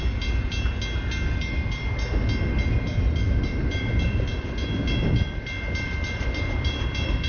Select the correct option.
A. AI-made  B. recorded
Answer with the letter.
B